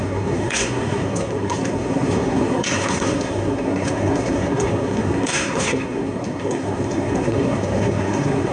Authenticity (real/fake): fake